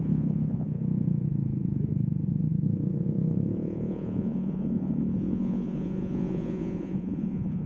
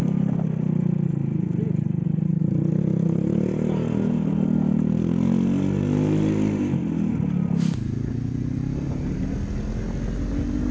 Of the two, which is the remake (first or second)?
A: first